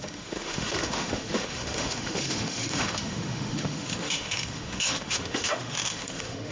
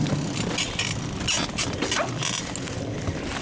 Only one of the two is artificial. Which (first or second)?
first